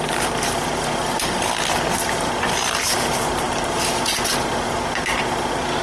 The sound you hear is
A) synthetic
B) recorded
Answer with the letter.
B